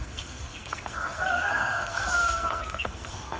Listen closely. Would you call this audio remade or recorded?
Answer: remade